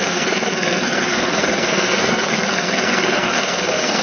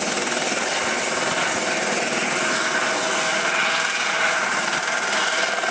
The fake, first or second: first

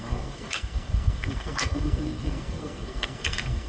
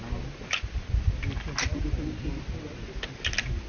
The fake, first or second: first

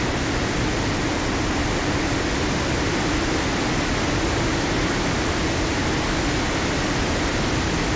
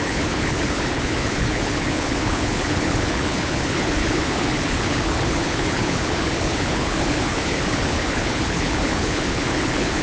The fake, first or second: second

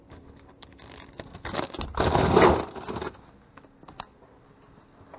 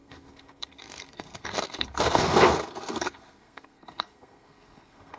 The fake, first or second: second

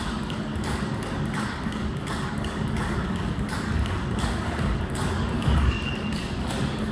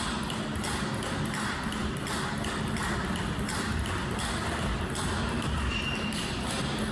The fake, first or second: first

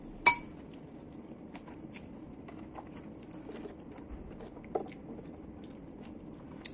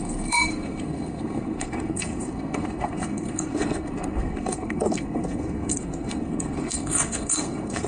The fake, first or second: second